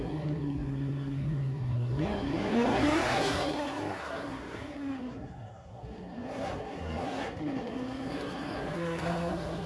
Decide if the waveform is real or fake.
fake